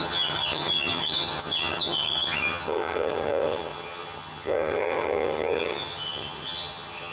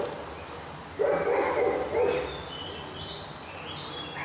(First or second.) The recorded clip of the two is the second